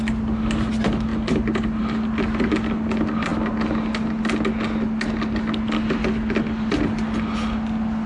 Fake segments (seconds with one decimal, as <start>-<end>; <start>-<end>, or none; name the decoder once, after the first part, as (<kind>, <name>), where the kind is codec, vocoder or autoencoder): none